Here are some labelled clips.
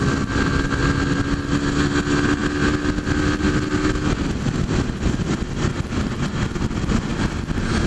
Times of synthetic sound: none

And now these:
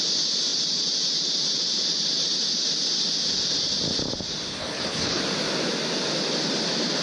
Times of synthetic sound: 4.5-5.2 (codec, HILCodec)

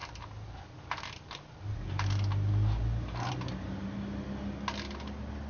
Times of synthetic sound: none

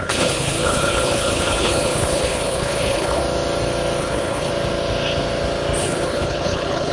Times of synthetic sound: 0.0-3.2 (codec, HILCodec); 4.0-4.5; 5.8-6.9

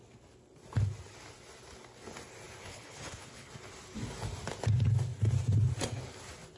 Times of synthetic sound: 2.7-3.5 (codec, HILCodec)

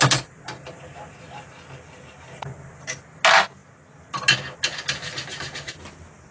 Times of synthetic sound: none

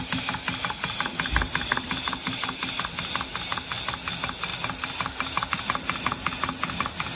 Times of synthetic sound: none

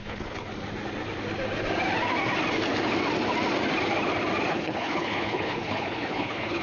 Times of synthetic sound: 0.0-0.5 (codec, HILCodec); 4.5-6.6